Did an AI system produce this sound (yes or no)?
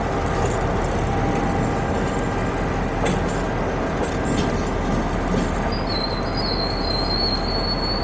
no